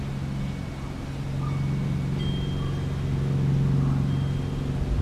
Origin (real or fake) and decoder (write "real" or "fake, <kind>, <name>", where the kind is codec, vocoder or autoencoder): real